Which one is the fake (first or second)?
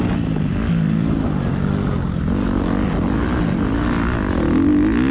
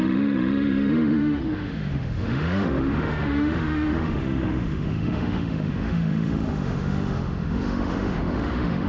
second